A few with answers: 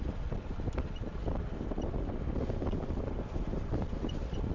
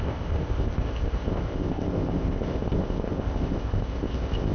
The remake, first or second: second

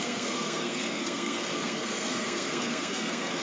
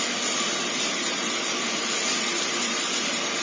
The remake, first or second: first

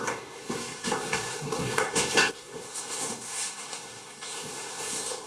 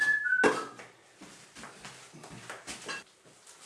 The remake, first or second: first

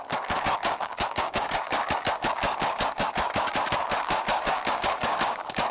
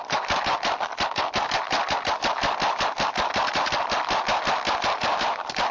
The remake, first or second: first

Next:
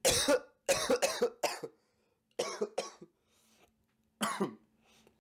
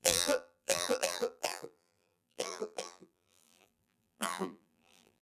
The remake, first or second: second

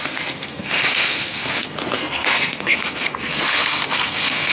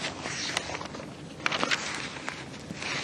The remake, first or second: first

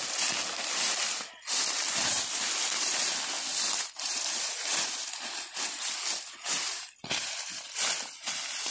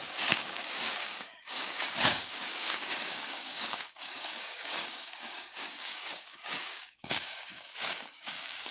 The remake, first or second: second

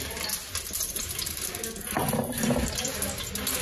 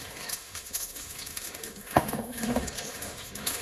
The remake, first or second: second